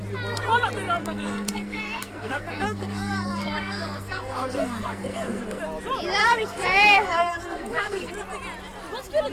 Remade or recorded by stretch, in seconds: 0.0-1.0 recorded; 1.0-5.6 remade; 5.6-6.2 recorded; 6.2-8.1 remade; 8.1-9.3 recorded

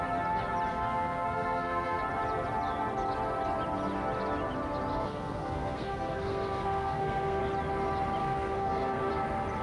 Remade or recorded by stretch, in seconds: 0.0-0.7 recorded; 0.7-2.0 remade; 2.0-4.9 recorded; 4.9-7.4 remade; 7.4-8.2 recorded; 8.2-9.1 remade; 9.1-9.6 recorded

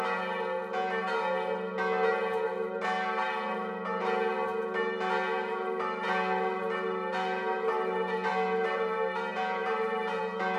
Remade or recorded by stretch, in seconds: 0.0-10.6 recorded

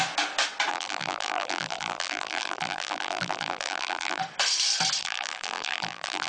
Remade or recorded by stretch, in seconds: 0.0-0.7 recorded; 0.7-4.2 remade; 4.2-5.0 recorded; 5.0-6.3 remade

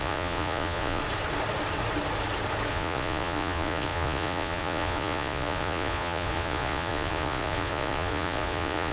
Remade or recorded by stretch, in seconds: 0.0-1.0 remade; 1.0-2.7 recorded; 2.7-8.9 remade

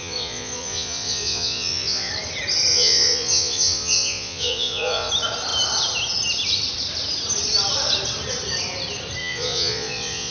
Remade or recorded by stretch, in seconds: 0.0-2.1 remade; 2.1-2.7 recorded; 2.7-5.1 remade; 5.1-9.2 recorded; 9.2-10.3 remade